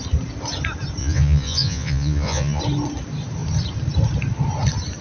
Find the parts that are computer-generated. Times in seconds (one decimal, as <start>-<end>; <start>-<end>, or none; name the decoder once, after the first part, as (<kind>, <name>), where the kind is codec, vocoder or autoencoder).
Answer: 1.0-2.6 (vocoder, Vocos)